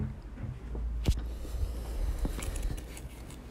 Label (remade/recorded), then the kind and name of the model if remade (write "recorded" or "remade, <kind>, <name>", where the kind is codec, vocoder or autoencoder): recorded